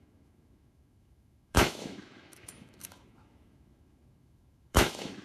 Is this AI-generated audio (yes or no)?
yes